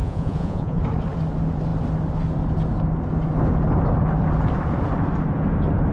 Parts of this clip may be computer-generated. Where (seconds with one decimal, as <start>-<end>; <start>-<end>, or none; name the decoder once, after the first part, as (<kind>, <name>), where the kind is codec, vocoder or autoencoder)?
0.0-0.8 (vocoder, Vocos)